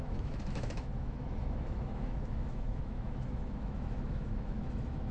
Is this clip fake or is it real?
fake